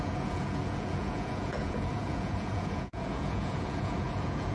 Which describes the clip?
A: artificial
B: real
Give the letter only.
A